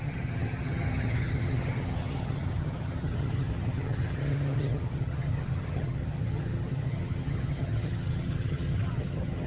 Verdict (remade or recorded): remade